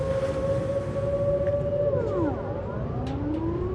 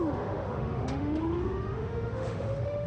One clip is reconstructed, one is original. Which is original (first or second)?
first